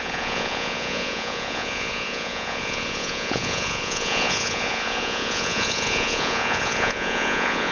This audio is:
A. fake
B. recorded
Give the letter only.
A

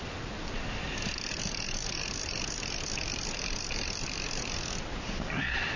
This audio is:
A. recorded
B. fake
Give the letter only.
A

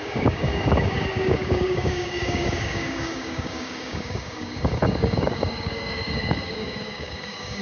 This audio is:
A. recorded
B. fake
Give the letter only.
B